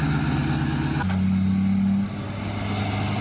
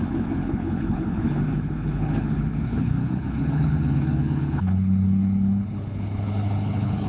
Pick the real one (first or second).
first